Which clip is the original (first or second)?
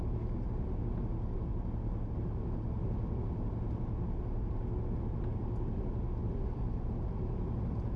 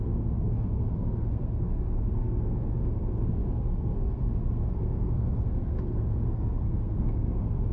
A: first